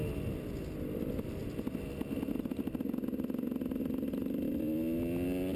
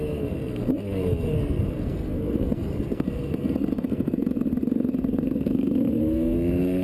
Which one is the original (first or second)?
first